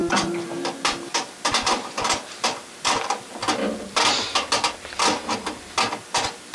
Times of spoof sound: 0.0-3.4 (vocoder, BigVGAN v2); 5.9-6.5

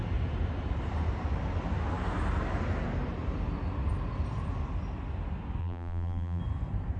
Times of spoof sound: 5.6-6.4 (vocoder, BigVGAN v2)

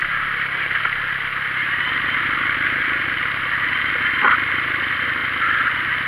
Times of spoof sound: 0.0-0.8 (vocoder, BigVGAN v2)

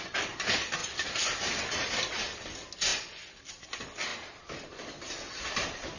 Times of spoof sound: 4.1-4.9 (vocoder, BigVGAN v2)